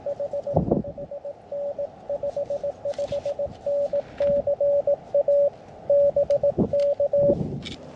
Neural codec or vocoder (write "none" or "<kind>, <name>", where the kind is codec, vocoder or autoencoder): none